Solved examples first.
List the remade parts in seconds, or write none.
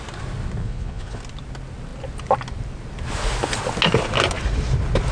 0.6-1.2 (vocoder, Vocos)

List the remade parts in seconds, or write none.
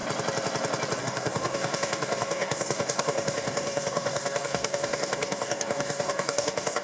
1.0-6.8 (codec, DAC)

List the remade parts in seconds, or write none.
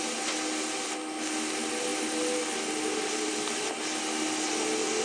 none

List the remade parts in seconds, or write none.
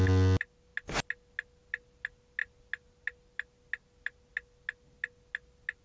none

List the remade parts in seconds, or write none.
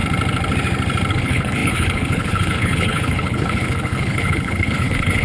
1.1-5.2 (codec, HILCodec)